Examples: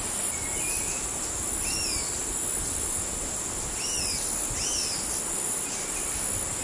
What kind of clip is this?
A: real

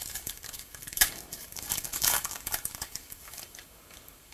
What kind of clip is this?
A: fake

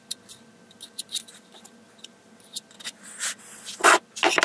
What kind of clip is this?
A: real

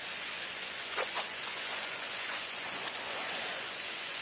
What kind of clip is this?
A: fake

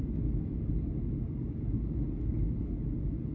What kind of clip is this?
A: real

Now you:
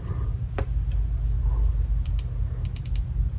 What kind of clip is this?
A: real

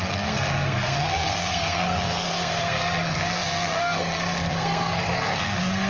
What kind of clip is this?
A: fake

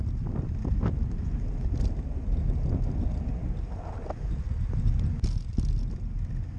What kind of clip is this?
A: real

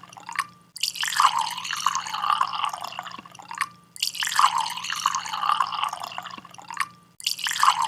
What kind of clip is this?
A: real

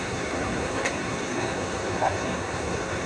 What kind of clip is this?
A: fake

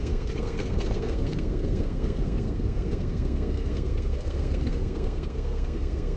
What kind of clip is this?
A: fake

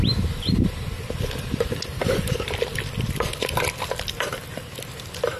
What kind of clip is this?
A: fake